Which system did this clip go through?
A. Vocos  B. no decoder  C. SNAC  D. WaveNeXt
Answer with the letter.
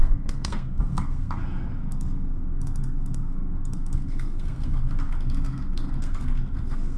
C